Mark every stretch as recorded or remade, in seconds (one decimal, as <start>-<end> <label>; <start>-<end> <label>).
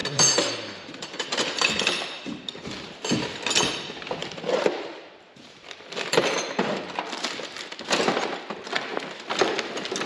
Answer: 0.0-2.5 remade; 2.5-4.2 recorded; 4.2-6.8 remade; 6.8-10.1 recorded